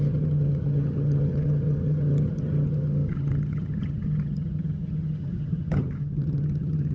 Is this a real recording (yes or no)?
no